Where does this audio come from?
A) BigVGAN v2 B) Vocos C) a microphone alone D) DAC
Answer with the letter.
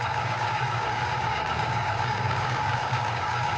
D